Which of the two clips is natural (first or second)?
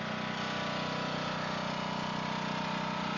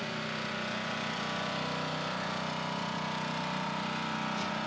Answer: first